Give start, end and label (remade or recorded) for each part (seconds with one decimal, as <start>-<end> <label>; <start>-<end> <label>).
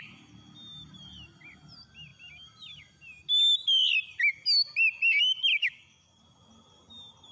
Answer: 0.0-5.5 recorded; 5.5-6.2 remade; 6.2-7.3 recorded